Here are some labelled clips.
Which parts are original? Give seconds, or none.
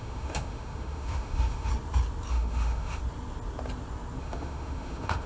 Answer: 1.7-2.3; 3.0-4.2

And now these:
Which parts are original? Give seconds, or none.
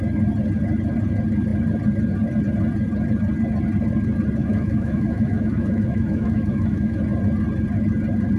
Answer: 0.0-4.4; 7.0-8.4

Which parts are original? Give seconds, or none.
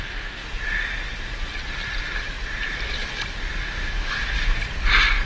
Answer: 0.4-3.6; 4.6-5.3